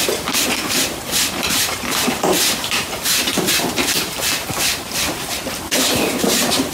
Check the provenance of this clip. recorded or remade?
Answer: remade